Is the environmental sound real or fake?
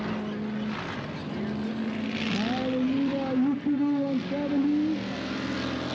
real